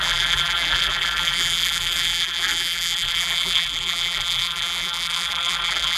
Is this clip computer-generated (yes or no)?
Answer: yes